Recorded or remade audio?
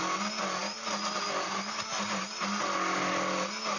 recorded